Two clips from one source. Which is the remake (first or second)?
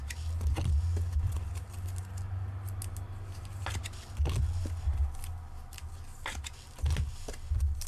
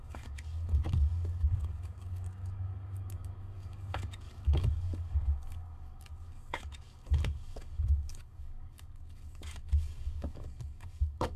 second